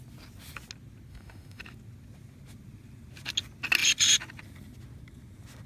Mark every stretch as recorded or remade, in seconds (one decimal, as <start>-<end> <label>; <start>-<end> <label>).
0.0-1.1 recorded; 1.1-1.6 remade; 1.6-5.7 recorded